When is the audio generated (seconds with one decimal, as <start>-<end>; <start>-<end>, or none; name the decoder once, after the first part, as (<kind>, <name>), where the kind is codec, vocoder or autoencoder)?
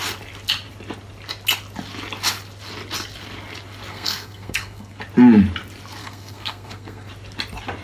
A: 3.9-5.0 (codec, SNAC); 6.0-7.1